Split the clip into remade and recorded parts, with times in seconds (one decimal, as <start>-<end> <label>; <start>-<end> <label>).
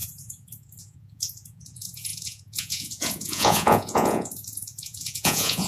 0.0-5.7 remade